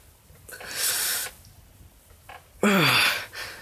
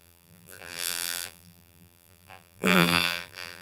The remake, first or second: second